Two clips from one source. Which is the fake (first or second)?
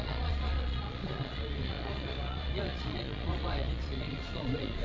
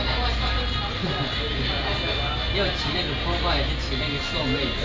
first